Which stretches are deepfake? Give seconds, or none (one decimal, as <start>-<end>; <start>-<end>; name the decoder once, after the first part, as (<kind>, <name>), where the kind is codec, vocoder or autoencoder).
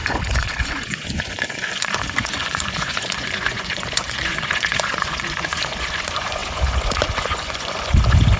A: 0.0-8.4 (vocoder, Vocos)